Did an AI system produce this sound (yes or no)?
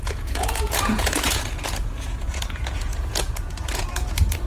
yes